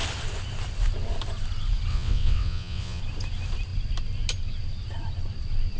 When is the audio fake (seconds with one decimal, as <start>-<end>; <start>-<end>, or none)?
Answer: 1.9-3.0